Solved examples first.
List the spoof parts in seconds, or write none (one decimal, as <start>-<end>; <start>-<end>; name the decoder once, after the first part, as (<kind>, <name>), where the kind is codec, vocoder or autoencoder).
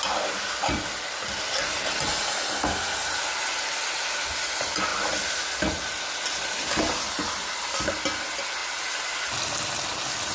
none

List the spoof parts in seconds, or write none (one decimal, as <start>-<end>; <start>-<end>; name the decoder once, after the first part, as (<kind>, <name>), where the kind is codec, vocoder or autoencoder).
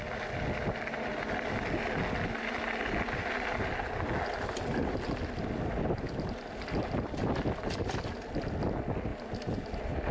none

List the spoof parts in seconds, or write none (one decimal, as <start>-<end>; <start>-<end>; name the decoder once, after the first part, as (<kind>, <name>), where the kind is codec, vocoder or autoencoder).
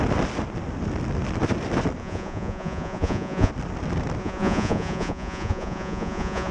2.0-3.5 (vocoder, Vocos); 4.2-6.5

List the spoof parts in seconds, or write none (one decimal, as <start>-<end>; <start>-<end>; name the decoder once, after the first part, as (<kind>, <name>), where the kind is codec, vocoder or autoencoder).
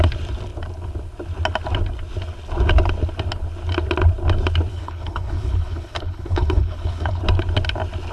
4.7-7.2 (codec, HILCodec)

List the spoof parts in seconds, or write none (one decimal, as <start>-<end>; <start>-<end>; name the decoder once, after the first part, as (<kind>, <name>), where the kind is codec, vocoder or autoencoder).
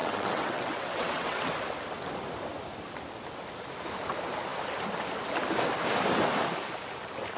0.0-1.5 (vocoder, WaveNeXt)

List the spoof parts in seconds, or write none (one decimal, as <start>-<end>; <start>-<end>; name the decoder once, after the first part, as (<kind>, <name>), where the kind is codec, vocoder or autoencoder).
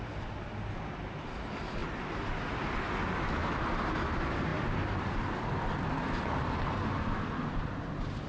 none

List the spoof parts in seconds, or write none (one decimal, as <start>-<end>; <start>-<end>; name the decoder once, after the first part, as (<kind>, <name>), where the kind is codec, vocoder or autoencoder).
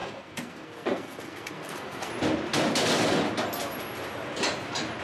0.0-2.1 (codec, SNAC)